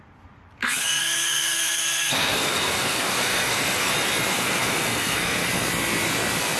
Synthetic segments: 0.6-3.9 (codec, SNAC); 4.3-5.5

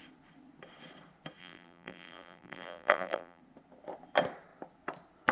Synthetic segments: 1.4-3.4 (vocoder, BigVGAN v2)

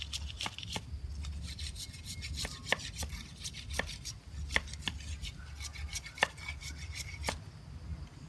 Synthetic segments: none

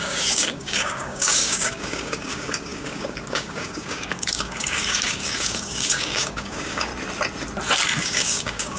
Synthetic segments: 0.0-6.9 (codec, DAC); 8.0-8.8

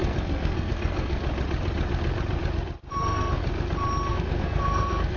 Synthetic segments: 0.0-1.2 (codec, SNAC); 3.0-3.4; 4.1-5.2